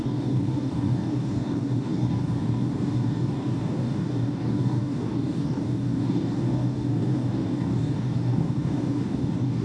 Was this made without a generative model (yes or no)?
no